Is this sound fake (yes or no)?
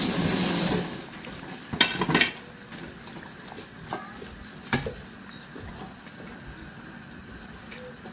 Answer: no